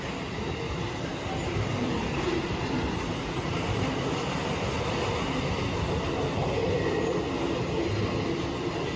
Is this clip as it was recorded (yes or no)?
yes